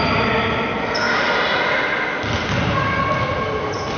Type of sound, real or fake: real